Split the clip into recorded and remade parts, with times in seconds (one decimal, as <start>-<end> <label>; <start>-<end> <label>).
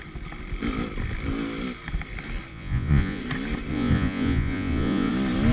0.0-2.5 recorded; 2.5-3.2 remade; 3.2-3.7 recorded; 3.7-5.1 remade; 5.1-5.5 recorded